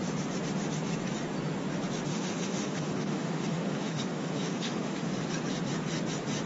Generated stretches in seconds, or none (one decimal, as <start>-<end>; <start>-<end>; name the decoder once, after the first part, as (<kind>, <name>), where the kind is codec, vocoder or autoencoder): 2.1-5.1 (autoencoder, DAC-VAE)